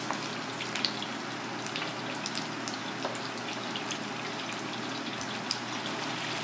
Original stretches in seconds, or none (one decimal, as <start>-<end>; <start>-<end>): 0.0-6.4